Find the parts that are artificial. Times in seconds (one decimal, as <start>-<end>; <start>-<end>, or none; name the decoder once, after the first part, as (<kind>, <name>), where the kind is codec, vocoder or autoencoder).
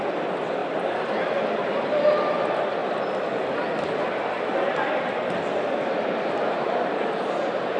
0.6-2.0 (vocoder, BigVGAN v2); 2.8-7.3